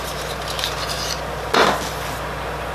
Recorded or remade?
recorded